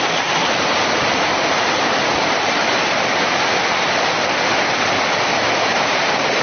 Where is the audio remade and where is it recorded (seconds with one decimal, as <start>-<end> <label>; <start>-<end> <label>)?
0.0-0.4 recorded; 0.4-3.3 remade; 3.3-5.7 recorded; 5.7-6.4 remade